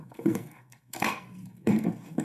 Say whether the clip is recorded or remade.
remade